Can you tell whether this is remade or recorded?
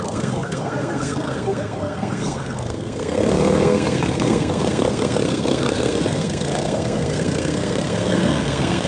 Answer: remade